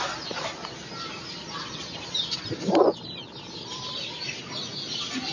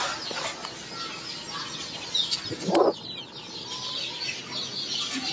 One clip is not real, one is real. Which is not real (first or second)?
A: first